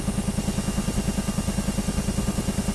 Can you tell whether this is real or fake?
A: real